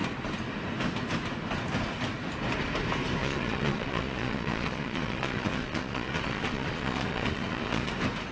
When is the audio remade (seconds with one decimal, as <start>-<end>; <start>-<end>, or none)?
3.2-7.9